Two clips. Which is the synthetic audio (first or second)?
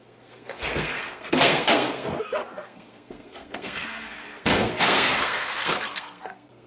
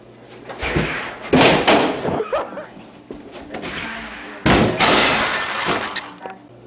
first